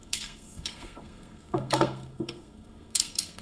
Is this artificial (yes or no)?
yes